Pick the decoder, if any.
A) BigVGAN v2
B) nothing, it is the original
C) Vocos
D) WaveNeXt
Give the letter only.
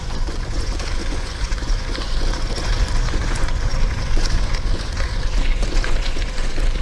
C